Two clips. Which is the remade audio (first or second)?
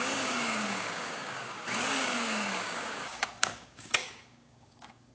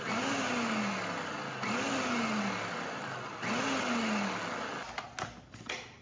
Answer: first